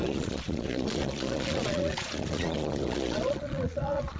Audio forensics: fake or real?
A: fake